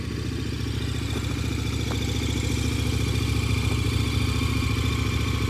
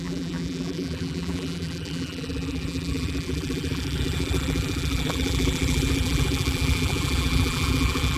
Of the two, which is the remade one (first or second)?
second